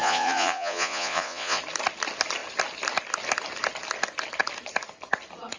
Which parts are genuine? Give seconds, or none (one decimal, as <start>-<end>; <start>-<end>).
1.6-5.6